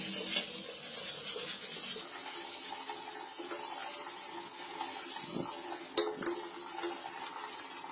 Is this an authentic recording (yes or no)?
yes